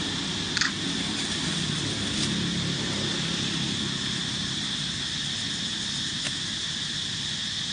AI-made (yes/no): no